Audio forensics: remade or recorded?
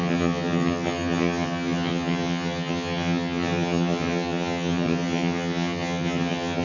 remade